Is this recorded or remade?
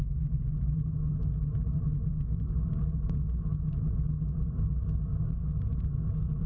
recorded